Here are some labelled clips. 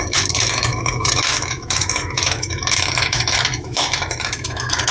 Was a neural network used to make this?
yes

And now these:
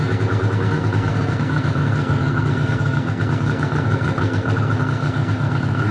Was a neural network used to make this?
yes